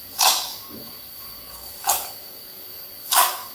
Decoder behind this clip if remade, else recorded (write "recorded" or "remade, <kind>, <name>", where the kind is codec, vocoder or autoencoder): remade, codec, DAC